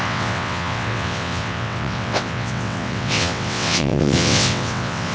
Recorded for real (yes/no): no